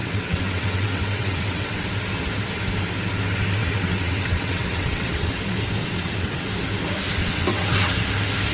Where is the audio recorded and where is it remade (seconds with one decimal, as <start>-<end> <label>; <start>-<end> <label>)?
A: 0.0-1.8 remade; 1.8-3.6 recorded; 3.6-5.3 remade; 5.3-5.8 recorded; 5.8-6.4 remade; 6.4-7.2 recorded; 7.2-7.9 remade; 7.9-8.5 recorded